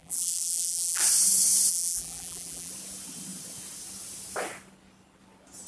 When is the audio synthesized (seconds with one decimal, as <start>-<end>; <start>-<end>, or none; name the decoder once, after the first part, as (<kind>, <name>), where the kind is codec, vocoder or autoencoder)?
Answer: 0.0-1.0 (vocoder, BigVGAN v2); 1.7-2.7